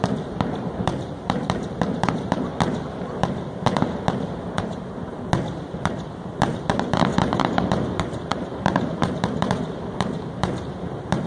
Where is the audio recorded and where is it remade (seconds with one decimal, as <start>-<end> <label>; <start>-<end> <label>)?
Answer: 0.0-2.5 remade; 2.5-4.4 recorded; 4.4-5.1 remade; 5.1-6.5 recorded; 6.5-11.3 remade